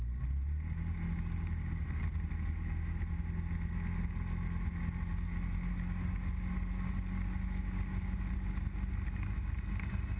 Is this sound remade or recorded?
recorded